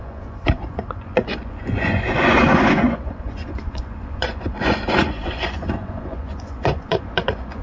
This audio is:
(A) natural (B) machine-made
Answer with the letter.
B